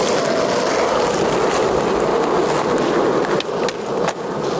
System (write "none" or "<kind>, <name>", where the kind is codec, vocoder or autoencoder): none